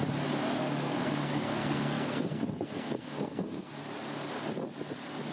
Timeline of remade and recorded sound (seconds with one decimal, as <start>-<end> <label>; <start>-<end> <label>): 0.0-0.5 recorded; 0.5-3.7 remade; 3.7-5.3 recorded